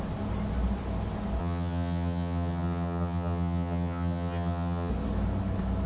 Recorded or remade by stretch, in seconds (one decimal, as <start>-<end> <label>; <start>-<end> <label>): 0.0-1.4 recorded; 1.4-4.9 remade; 4.9-5.9 recorded

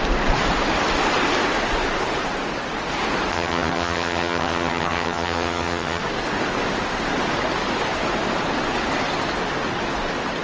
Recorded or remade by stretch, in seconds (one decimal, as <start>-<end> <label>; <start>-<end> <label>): 0.0-3.3 recorded; 3.3-6.0 remade; 6.0-10.4 recorded

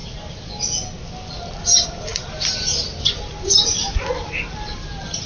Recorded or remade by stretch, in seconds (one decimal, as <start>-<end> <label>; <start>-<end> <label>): 0.0-5.3 recorded

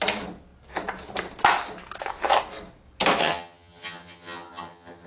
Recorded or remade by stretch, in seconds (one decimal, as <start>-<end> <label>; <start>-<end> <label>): 0.0-3.2 recorded; 3.2-5.1 remade

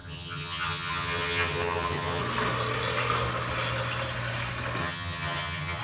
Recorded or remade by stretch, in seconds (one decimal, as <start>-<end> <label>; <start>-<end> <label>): 0.0-2.2 remade; 2.2-4.8 recorded; 4.8-5.8 remade

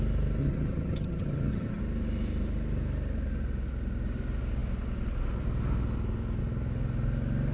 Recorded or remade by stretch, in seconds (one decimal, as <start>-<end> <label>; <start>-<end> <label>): 0.0-0.4 recorded; 0.4-1.8 remade; 1.8-7.5 recorded

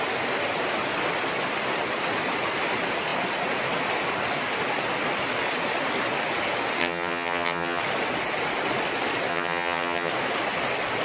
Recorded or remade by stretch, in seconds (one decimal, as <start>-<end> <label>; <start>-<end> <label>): 0.0-6.8 recorded; 6.8-7.8 remade; 7.8-9.3 recorded; 9.3-10.1 remade; 10.1-11.0 recorded